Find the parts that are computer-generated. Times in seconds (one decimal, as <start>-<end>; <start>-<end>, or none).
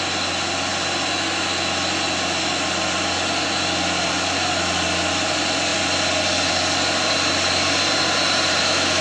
none